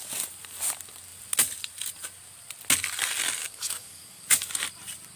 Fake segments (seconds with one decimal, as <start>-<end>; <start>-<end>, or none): 3.4-4.5